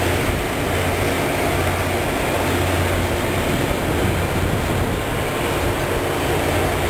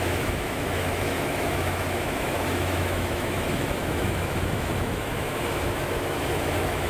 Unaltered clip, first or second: first